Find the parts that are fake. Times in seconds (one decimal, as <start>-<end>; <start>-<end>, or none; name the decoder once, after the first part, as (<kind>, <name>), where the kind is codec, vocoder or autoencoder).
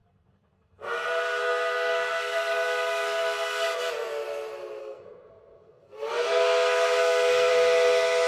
0.0-3.9 (codec, SNAC); 4.8-7.5